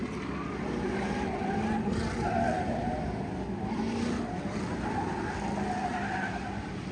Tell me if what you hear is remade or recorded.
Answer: recorded